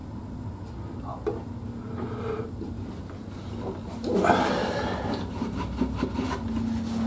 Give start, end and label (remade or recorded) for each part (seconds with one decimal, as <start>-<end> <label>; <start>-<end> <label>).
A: 0.0-7.1 recorded